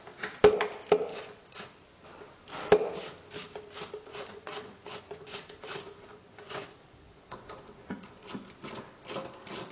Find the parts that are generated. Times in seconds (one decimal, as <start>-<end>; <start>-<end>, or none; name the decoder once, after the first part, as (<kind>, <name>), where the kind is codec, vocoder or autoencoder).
1.1-1.7 (vocoder, Vocos); 4.1-8.3

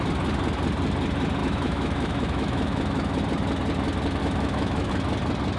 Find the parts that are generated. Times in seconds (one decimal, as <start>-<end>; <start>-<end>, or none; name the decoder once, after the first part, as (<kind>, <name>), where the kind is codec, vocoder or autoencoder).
1.4-3.2 (autoencoder, DAC-VAE); 4.2-4.9

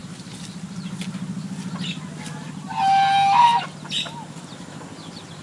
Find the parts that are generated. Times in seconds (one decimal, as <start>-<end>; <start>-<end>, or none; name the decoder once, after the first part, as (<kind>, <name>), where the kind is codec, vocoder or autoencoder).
none

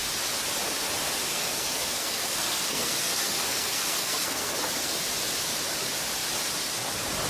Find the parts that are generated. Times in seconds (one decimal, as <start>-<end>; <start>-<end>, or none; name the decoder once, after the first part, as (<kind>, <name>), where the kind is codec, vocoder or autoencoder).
1.3-5.0 (codec, SNAC)

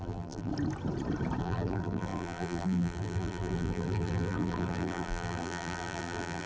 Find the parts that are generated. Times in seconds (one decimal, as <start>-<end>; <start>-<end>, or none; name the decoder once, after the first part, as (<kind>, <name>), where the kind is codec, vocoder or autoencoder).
0.0-0.5 (vocoder, BigVGAN v2); 1.4-6.5

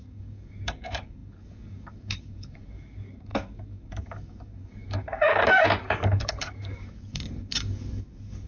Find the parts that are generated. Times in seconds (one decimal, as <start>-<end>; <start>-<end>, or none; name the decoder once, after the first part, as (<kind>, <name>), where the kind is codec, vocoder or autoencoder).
0.0-8.5 (codec, DAC)

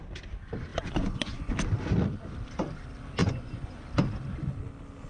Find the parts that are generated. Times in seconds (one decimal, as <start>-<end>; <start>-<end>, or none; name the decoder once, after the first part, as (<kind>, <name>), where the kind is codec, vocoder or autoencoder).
0.7-1.5 (vocoder, Vocos); 3.2-3.8